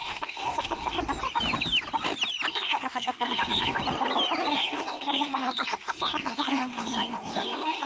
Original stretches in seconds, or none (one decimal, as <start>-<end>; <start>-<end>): 1.0-2.5; 3.8-4.5